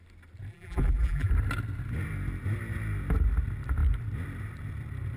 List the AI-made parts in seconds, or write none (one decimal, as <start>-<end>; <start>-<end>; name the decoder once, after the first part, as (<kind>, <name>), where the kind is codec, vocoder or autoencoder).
0.5-1.3 (vocoder, BigVGAN v2)